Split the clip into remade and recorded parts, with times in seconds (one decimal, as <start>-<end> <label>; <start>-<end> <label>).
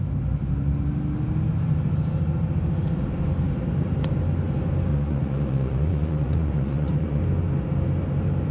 0.0-4.9 recorded; 4.9-7.2 remade; 7.2-8.5 recorded